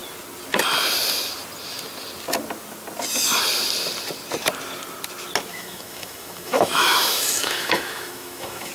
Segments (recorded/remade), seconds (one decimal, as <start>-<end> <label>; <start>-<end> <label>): 0.0-5.5 recorded; 5.5-8.7 remade